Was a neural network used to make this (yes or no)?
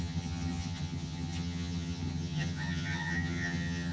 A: yes